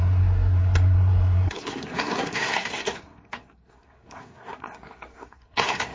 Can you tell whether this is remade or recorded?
remade